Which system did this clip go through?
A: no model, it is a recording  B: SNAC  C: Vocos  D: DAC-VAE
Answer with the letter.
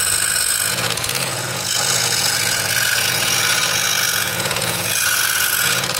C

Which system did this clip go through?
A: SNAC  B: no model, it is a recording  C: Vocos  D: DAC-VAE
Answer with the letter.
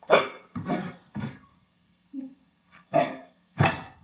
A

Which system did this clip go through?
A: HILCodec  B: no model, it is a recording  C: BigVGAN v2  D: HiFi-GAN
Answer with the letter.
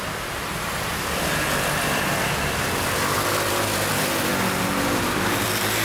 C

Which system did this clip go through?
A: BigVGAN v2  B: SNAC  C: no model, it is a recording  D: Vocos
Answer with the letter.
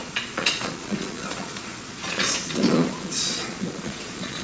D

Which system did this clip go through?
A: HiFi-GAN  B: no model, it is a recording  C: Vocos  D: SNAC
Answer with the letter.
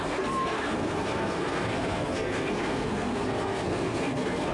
D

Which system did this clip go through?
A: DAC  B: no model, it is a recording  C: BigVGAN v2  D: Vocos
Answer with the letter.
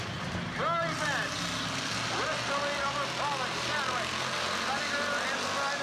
B